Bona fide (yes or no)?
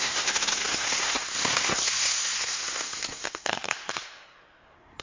no